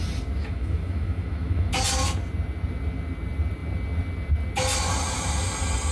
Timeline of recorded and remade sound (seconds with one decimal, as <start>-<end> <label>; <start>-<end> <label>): 0.0-0.4 recorded; 0.4-1.7 remade; 1.7-5.9 recorded

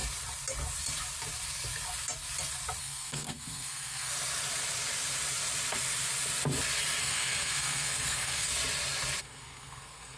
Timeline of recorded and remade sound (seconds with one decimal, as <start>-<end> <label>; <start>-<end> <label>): 0.0-2.8 recorded; 2.8-4.1 remade; 4.1-7.0 recorded; 7.0-8.5 remade; 8.5-9.2 recorded; 9.2-10.2 remade

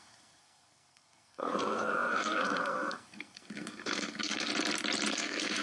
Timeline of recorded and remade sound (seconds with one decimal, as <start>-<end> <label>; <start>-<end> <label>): 0.0-4.5 remade; 4.5-5.1 recorded; 5.1-5.6 remade